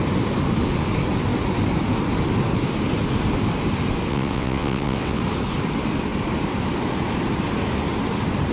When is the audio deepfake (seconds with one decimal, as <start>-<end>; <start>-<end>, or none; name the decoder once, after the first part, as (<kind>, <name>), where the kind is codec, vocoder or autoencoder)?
4.1-5.2 (vocoder, WaveNeXt)